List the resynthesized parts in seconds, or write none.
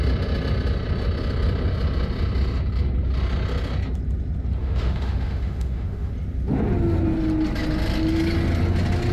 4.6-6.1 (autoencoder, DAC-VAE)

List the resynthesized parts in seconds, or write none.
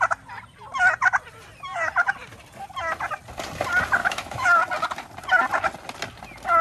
4.0-4.6 (autoencoder, DAC-VAE)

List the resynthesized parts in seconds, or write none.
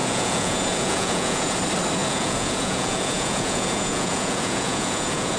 0.0-1.6 (vocoder, Vocos); 2.0-5.4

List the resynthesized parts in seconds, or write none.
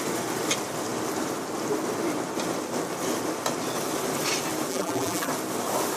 4.7-5.3 (vocoder, BigVGAN v2)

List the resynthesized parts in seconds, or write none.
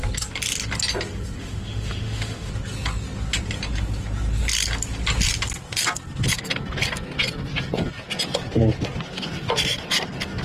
1.4-2.5 (autoencoder, DAC-VAE)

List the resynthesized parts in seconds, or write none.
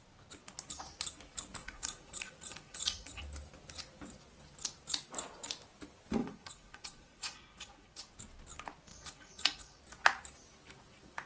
1.6-3.2 (vocoder, Vocos); 6.2-8.0; 8.9-9.8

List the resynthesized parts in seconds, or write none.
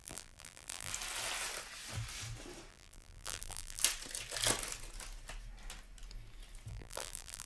0.0-0.9 (vocoder, BigVGAN v2); 2.7-3.8; 6.7-7.5